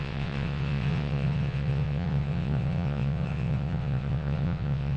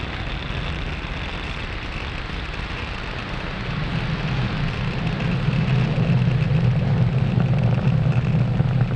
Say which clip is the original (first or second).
second